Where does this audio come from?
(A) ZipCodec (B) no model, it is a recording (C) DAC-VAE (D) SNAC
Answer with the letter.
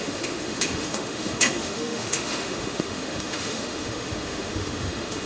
C